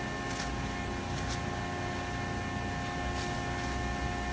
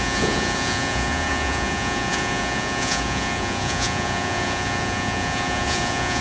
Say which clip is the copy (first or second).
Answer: second